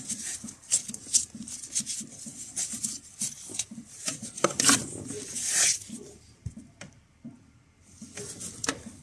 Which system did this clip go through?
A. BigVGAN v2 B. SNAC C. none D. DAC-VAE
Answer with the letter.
A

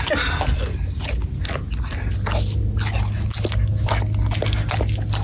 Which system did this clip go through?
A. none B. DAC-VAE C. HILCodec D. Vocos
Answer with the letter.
A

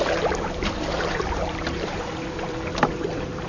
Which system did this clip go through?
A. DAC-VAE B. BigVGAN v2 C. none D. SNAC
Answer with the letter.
B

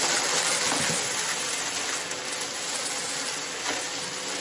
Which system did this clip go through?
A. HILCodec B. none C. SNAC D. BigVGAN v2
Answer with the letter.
B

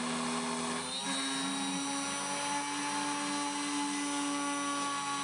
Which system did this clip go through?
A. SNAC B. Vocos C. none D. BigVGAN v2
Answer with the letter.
C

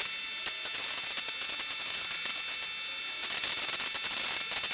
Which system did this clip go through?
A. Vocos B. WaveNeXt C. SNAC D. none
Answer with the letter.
D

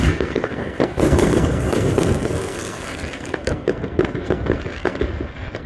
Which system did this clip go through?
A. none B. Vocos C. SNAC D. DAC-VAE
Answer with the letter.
C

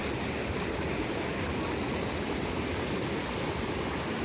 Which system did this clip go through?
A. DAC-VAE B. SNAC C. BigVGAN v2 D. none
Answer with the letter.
D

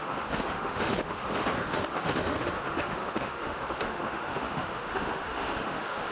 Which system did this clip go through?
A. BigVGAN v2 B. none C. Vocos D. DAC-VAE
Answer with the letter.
D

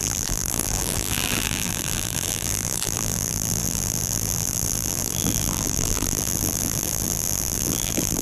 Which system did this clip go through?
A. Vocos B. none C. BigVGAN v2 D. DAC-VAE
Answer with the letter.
C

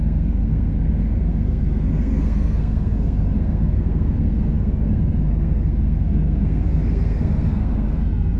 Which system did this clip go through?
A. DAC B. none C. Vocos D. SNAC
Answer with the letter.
D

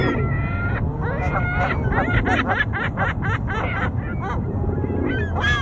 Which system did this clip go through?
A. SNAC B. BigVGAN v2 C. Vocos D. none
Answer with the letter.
D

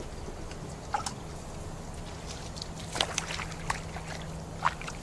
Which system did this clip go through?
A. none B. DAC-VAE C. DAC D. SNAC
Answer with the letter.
A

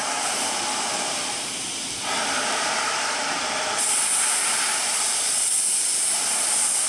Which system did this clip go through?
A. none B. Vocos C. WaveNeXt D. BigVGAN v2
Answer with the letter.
D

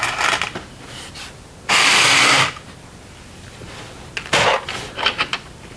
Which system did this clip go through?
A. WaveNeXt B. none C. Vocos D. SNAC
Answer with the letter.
B